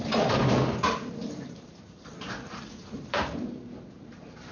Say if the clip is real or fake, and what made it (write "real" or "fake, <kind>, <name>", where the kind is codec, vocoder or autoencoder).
fake, vocoder, BigVGAN v2